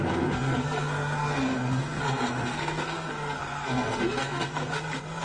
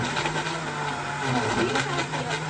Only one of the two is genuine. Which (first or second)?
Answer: second